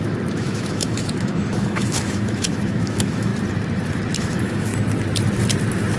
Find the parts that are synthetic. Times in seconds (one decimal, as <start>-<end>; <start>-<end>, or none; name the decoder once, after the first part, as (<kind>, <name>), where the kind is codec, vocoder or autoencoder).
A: 0.0-3.3 (autoencoder, DAC-VAE); 4.2-4.7